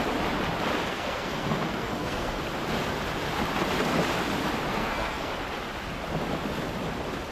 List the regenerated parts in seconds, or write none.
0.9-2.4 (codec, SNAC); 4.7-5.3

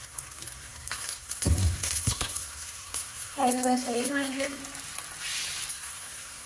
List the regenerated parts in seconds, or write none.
0.0-4.6 (codec, SNAC); 5.7-6.5

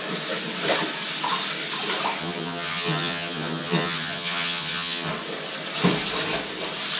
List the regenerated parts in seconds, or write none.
2.2-5.1 (vocoder, HiFi-GAN)

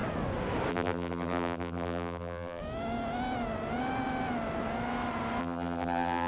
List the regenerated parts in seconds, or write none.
0.7-2.6 (vocoder, BigVGAN v2); 5.4-6.3

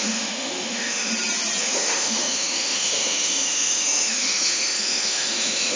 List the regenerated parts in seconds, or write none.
0.0-1.1 (autoencoder, DAC-VAE); 1.6-5.8

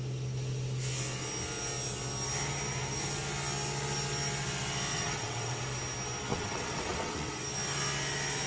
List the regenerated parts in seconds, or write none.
4.9-5.6 (vocoder, WaveNeXt); 6.3-7.3

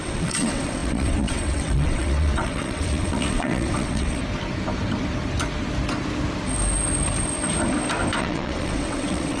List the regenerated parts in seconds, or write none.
0.0-4.2 (vocoder, WaveNeXt); 8.2-9.4